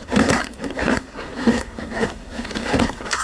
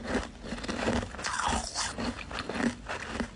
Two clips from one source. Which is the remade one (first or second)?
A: first